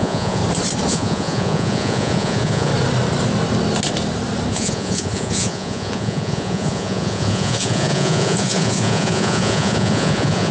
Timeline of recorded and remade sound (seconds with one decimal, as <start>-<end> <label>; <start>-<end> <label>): 0.0-0.4 remade; 0.4-0.9 recorded; 0.9-2.7 remade; 2.7-4.5 recorded; 4.5-10.5 remade